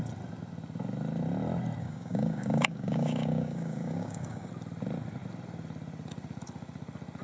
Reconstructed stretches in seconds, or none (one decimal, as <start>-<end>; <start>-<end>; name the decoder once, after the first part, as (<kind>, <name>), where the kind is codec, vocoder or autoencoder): 1.8-4.5 (codec, DAC)